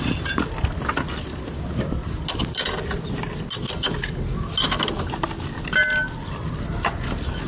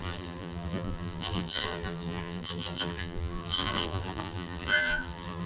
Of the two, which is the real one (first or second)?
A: first